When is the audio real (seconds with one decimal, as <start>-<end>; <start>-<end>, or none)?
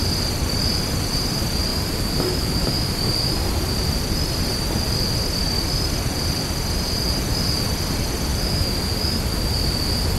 0.0-1.7; 2.2-10.2